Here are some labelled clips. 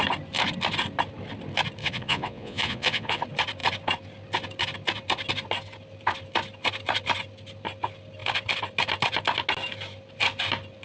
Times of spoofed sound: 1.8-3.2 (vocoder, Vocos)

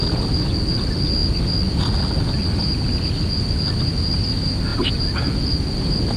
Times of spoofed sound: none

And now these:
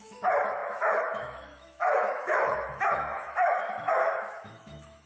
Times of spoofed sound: 0.0-5.1 (autoencoder, DAC-VAE)

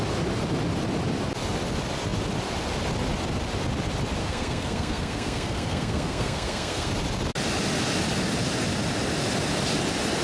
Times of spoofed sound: 4.2-6.9 (codec, SNAC)

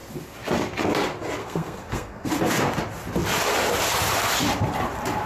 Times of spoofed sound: 1.4-2.3 (codec, SNAC)

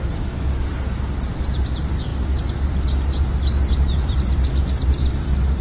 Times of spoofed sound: none

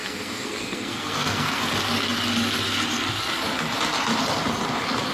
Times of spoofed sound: 0.0-1.6 (codec, SNAC)